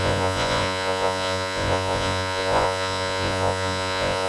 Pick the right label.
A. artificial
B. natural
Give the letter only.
A